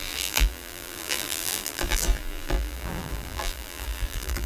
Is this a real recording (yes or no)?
no